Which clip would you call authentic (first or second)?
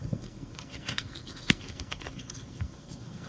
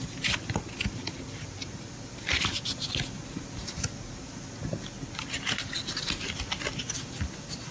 second